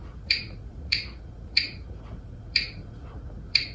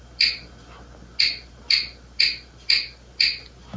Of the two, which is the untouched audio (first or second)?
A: second